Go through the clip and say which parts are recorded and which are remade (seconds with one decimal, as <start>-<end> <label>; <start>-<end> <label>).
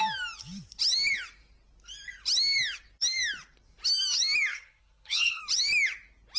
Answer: 0.0-4.5 recorded; 4.5-5.4 remade; 5.4-6.4 recorded